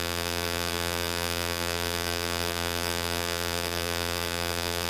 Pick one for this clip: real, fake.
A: fake